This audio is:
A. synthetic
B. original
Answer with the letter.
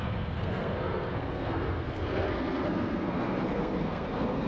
A